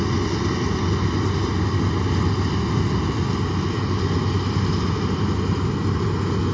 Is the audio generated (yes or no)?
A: no